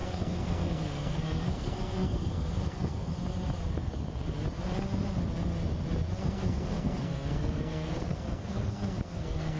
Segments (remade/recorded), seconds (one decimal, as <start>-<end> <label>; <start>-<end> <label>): 0.0-3.1 remade; 3.1-6.2 recorded; 6.2-9.6 remade